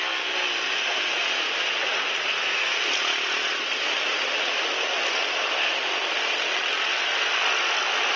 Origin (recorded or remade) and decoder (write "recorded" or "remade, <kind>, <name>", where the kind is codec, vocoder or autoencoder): recorded